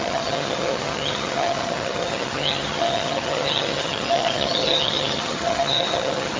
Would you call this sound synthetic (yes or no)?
yes